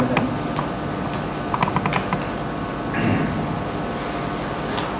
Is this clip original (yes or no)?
yes